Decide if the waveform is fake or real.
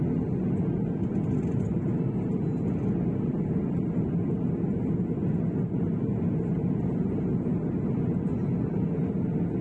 real